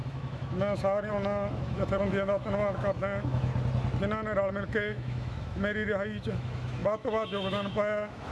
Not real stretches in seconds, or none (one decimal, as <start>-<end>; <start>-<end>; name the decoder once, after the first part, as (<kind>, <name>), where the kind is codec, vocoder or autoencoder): 0.0-3.5 (autoencoder, DAC-VAE); 4.5-8.3